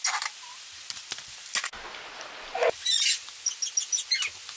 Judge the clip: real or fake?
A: real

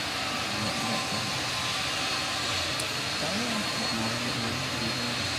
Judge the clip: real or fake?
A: real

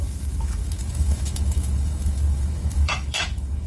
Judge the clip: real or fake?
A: fake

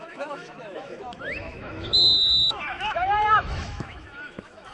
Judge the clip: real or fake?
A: fake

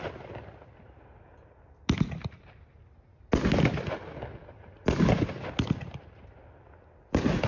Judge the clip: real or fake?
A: real